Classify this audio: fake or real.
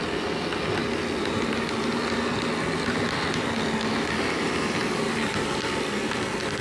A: real